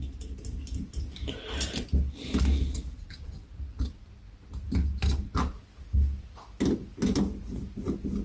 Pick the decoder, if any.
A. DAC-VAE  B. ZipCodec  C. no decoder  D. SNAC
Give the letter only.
C